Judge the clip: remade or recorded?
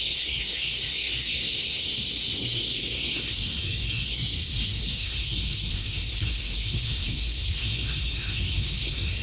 remade